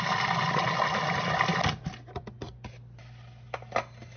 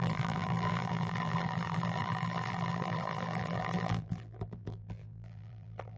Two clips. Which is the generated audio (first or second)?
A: second